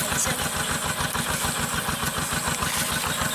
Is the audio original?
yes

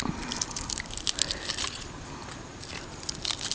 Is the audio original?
yes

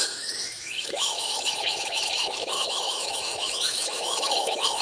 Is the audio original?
no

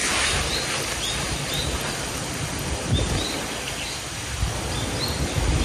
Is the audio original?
yes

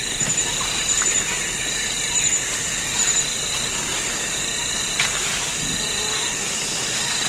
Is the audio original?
yes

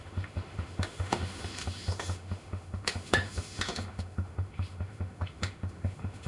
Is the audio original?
no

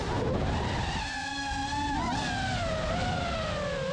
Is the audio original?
yes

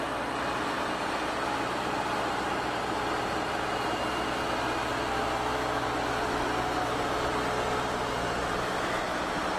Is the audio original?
yes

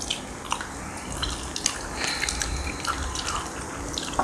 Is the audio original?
yes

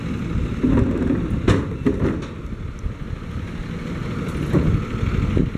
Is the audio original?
yes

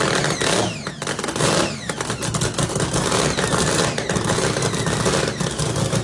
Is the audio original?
yes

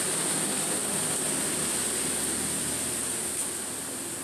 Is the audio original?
yes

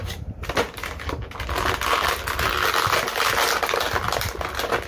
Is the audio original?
yes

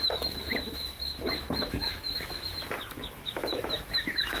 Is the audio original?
no